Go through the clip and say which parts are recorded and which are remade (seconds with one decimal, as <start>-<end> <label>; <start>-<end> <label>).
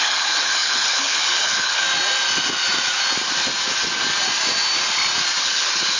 0.0-1.8 remade; 1.8-5.4 recorded; 5.4-6.0 remade